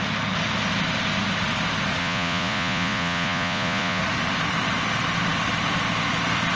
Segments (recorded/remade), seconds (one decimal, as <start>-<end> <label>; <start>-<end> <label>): 0.0-2.0 recorded; 2.0-4.0 remade; 4.0-6.6 recorded